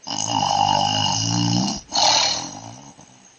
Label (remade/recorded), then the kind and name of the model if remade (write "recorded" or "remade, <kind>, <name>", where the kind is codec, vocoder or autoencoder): recorded